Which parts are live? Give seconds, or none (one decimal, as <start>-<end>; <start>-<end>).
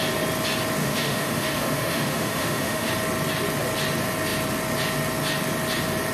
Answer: 0.0-0.8; 2.9-6.1